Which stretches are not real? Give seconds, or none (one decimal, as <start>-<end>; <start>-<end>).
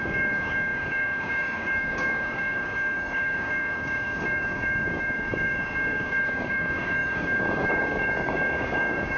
0.0-9.2